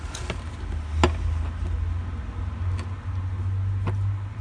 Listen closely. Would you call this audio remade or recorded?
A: recorded